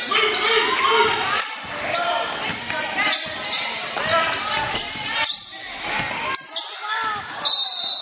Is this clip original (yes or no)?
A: yes